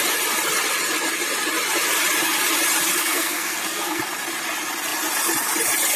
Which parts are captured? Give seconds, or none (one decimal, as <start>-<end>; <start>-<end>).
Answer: 0.0-3.0; 4.0-6.0